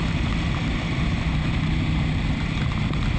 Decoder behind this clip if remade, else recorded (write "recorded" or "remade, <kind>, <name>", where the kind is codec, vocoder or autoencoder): recorded